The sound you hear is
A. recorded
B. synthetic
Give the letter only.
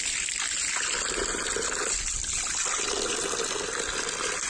A